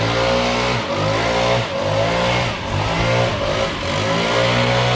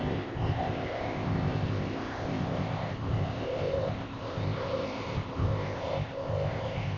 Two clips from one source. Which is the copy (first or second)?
second